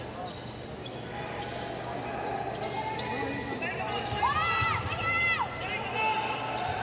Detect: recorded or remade recorded